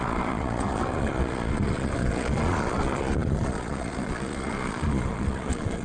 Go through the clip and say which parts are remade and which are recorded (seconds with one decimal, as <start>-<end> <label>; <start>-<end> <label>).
0.0-5.8 remade